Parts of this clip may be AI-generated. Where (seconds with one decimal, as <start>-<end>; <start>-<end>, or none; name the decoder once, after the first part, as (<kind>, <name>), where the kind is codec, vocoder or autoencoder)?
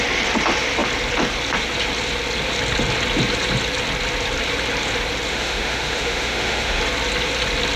5.3-6.8 (autoencoder, DAC-VAE)